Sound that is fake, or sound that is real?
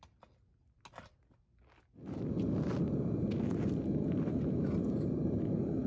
real